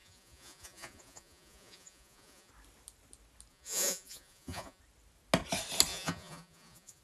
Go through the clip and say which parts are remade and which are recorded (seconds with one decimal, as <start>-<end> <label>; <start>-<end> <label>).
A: 0.0-2.5 remade; 2.5-3.5 recorded; 3.5-4.8 remade; 4.8-5.9 recorded; 5.9-7.0 remade